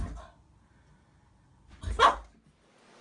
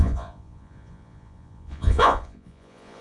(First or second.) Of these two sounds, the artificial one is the second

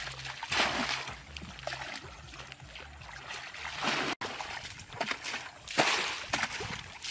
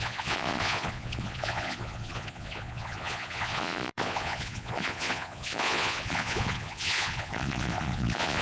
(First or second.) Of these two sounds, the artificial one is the second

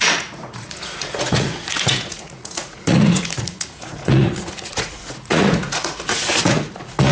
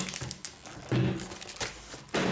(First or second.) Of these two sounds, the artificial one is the first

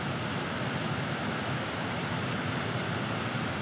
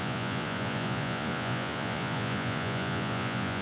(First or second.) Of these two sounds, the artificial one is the second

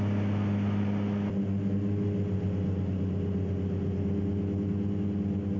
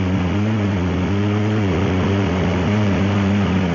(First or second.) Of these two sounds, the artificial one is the second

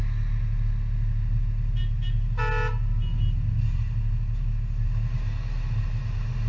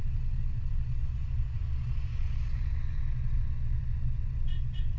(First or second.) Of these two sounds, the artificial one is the second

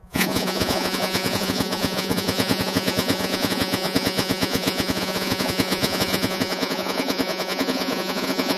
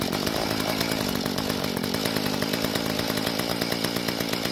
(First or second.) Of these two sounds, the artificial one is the first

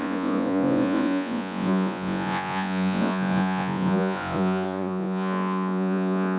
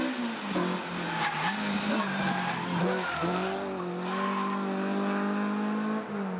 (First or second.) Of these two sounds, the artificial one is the first